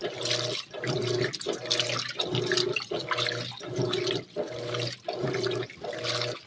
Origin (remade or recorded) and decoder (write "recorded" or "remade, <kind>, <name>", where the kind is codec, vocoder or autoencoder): recorded